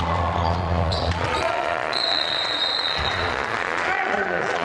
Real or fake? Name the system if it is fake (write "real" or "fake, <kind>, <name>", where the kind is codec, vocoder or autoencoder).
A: fake, vocoder, Vocos